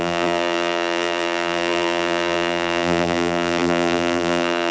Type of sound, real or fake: fake